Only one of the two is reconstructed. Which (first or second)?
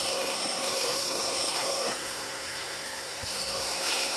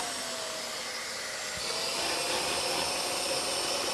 first